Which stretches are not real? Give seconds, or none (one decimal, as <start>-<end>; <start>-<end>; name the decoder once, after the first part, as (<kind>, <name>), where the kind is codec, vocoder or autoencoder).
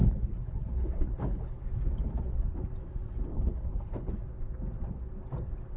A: 0.0-1.6 (codec, HILCodec); 3.3-4.2